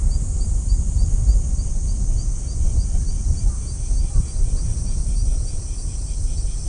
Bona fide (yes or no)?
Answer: yes